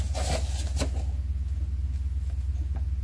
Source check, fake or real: real